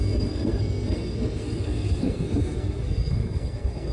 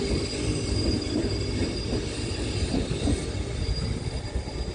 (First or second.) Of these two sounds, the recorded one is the second